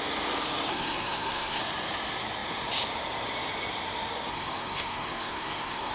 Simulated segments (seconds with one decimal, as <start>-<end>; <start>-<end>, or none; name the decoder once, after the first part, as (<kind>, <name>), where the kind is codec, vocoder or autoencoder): 0.7-1.6 (codec, SNAC); 4.3-5.9